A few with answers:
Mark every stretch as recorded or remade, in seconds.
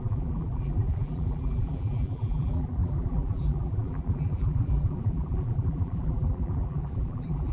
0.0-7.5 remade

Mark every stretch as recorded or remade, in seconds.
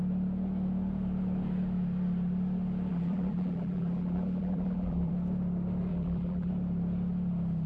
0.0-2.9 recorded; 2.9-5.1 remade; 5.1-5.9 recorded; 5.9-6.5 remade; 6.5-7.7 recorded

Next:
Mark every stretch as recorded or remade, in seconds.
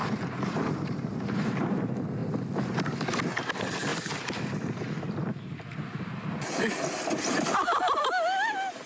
0.0-1.8 remade; 1.8-3.9 recorded; 3.9-4.5 remade; 4.5-8.9 recorded